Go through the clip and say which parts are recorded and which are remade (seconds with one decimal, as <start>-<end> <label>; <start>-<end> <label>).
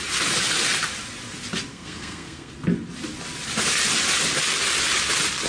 0.0-1.7 recorded; 1.7-2.5 remade; 2.5-5.5 recorded